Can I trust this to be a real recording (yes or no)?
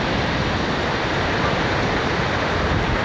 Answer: yes